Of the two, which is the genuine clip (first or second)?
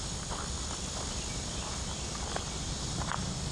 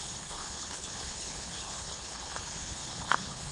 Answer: first